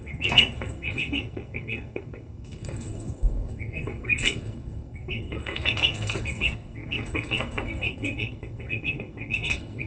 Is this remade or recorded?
remade